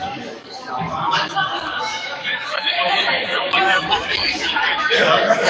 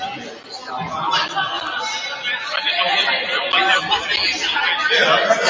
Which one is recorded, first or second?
second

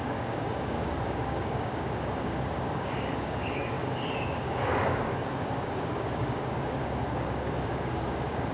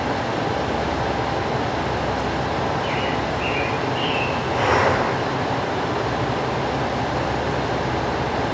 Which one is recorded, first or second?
second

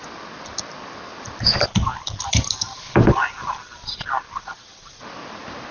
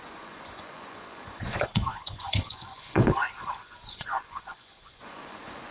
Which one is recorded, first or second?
first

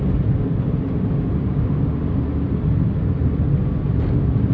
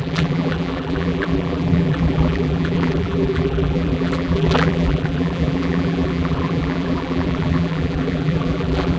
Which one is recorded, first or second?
first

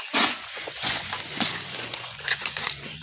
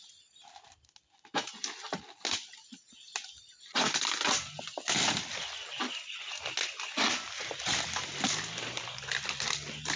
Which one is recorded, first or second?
second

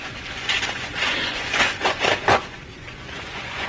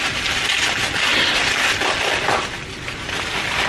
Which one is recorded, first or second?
second